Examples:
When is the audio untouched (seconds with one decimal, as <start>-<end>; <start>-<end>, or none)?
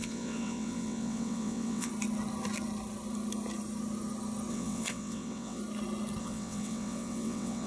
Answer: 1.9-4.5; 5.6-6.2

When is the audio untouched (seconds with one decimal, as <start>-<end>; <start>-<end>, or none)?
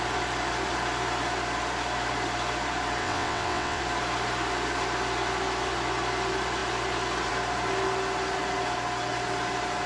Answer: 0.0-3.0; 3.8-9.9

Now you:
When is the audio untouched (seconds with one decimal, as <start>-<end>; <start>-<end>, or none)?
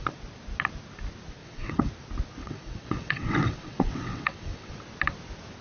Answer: 0.0-1.4; 1.9-2.4; 4.7-5.6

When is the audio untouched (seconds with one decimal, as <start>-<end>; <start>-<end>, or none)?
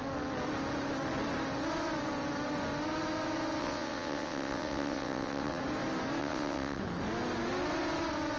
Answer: 0.0-3.6; 5.6-6.2; 6.8-8.4